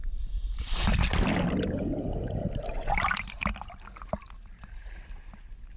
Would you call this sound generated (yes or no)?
no